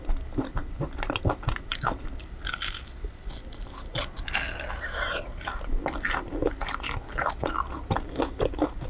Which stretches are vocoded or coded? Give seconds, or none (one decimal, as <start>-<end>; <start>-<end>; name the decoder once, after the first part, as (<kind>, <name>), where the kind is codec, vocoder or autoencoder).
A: none